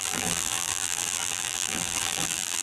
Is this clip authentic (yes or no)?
no